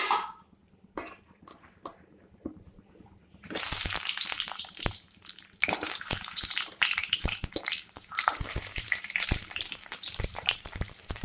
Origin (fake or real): fake